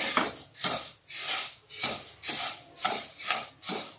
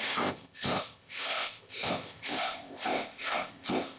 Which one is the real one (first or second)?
first